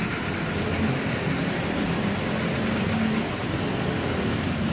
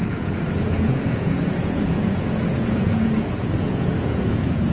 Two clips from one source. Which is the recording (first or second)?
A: first